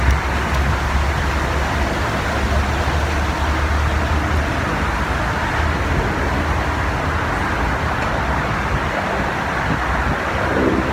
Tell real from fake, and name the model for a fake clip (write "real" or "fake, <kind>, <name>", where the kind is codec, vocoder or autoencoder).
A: real